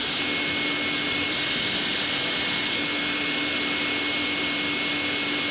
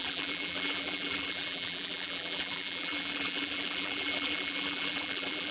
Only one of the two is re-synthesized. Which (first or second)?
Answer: second